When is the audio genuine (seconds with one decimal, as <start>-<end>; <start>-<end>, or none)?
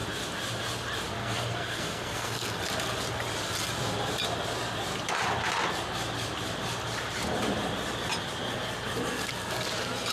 0.0-1.2; 2.6-10.1